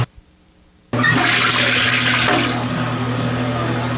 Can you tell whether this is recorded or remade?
recorded